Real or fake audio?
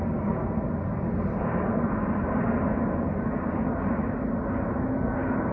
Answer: real